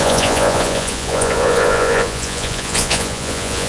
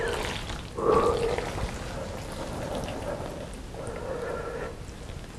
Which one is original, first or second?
second